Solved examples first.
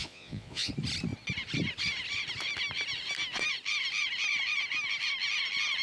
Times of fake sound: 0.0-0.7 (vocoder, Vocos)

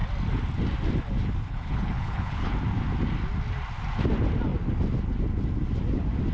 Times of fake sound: 1.5-2.5 (codec, HILCodec)

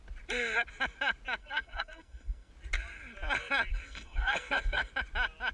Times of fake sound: 1.4-2.5 (codec, SNAC); 3.7-4.9

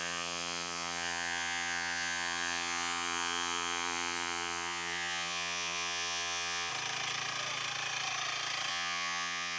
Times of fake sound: 0.0-6.7 (vocoder, Vocos); 8.7-9.6